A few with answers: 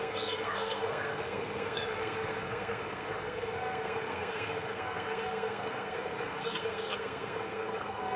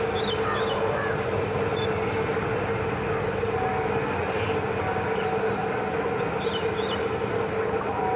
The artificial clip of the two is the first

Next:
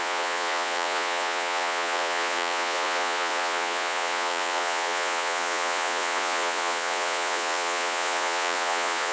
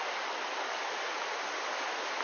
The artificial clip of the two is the first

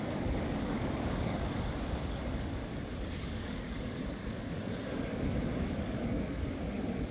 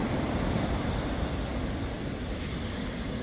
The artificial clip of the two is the first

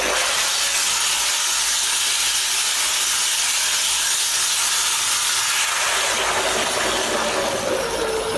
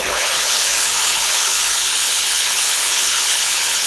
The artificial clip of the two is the second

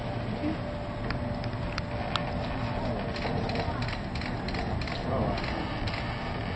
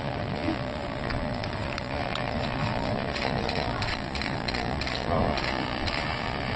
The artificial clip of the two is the second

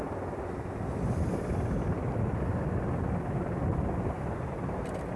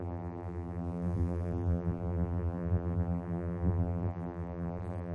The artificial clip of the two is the second